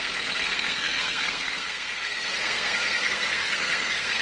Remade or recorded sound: remade